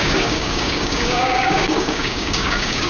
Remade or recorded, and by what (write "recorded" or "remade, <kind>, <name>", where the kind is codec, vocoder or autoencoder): remade, codec, DAC